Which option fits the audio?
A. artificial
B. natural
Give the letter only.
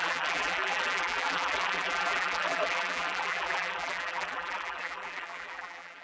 A